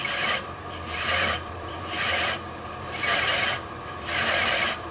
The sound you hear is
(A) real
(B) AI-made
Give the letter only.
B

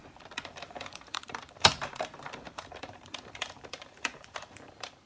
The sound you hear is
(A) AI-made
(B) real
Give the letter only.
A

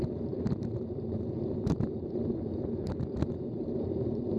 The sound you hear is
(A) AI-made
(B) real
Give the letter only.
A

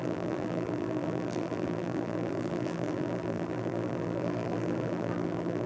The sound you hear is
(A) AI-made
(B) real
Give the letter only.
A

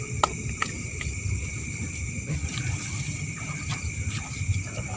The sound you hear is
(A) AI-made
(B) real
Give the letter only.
A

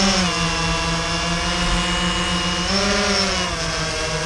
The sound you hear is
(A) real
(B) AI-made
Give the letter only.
A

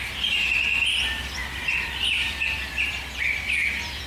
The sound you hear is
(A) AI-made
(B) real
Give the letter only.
A